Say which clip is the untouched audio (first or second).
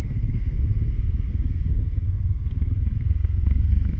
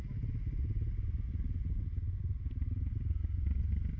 second